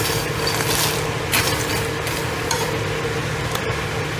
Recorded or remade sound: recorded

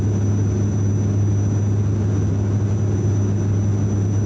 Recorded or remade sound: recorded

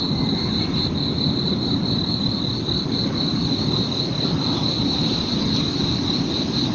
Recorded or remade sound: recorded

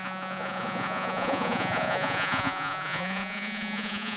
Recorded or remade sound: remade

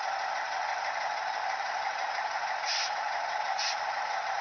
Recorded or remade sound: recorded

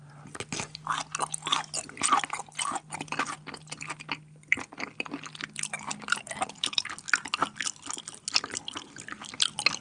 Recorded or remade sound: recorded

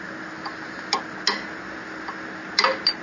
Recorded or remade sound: recorded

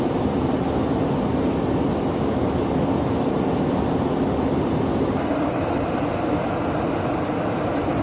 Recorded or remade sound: recorded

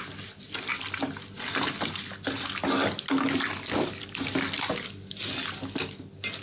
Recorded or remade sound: recorded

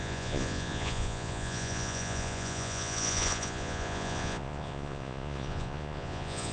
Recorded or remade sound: remade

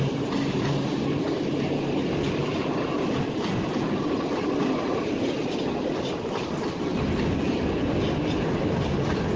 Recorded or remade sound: recorded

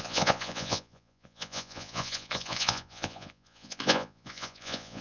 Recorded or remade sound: remade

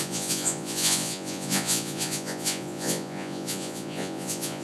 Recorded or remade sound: remade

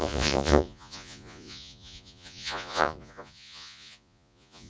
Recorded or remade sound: remade